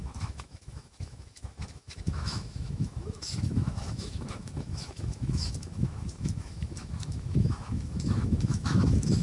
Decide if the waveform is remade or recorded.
remade